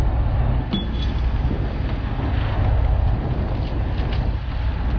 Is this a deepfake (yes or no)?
no